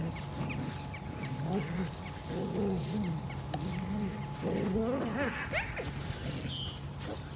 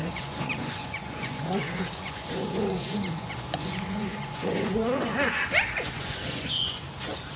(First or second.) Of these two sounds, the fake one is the second